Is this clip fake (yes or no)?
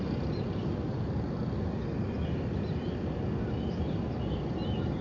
no